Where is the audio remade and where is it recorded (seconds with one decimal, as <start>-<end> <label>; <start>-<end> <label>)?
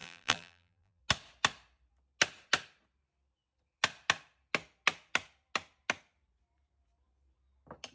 0.0-1.0 remade; 1.0-7.9 recorded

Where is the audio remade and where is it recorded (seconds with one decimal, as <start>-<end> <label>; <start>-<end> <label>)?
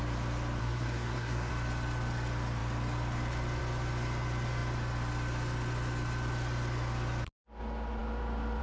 0.0-0.6 recorded; 0.6-1.5 remade; 1.5-8.6 recorded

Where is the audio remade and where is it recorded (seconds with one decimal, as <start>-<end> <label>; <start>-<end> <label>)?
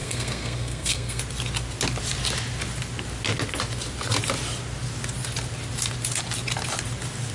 0.0-1.2 remade; 1.2-7.3 recorded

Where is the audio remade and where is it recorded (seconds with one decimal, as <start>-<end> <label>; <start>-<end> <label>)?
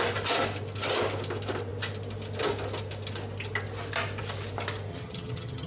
0.0-4.9 recorded; 4.9-5.7 remade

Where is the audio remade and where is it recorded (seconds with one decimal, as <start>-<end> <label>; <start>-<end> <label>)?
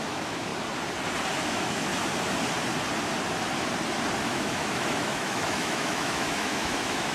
0.0-0.5 remade; 0.5-1.5 recorded; 1.5-1.9 remade; 1.9-4.2 recorded; 4.2-7.1 remade